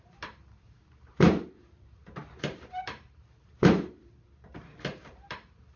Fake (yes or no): yes